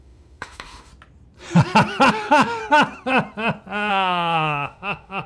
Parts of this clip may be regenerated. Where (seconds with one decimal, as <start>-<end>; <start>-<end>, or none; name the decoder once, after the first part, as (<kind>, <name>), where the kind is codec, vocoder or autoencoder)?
0.0-0.9 (autoencoder, DAC-VAE); 2.1-2.6; 3.9-5.3